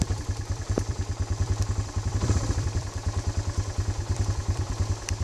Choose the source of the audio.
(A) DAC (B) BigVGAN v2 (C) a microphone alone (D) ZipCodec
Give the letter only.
B